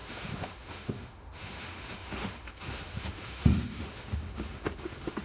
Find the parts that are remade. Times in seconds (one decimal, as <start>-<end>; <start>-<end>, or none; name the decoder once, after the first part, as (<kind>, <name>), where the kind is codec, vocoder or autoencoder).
0.0-5.2 (autoencoder, DAC-VAE)